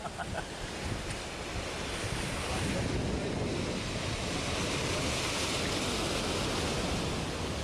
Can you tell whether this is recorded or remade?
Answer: recorded